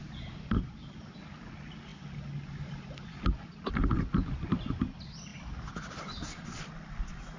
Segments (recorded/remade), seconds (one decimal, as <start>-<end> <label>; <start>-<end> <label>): 0.0-7.4 recorded